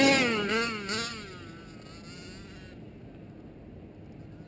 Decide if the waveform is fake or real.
real